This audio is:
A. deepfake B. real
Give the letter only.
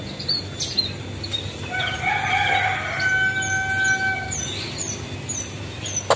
B